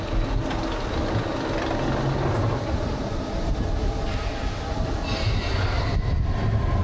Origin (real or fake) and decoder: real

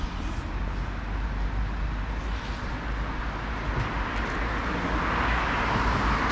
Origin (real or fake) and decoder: real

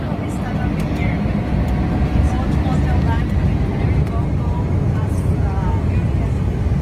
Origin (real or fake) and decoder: real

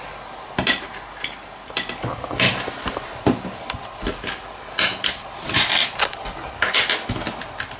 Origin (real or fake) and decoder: real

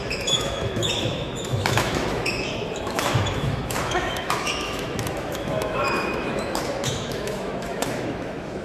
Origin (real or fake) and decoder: fake, autoencoder, DAC-VAE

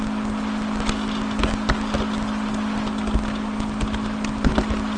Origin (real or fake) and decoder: real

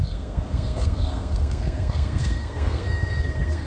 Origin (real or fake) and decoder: fake, codec, SNAC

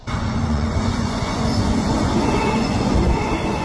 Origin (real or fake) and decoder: fake, vocoder, Vocos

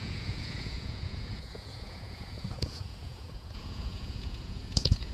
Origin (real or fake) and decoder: fake, vocoder, Vocos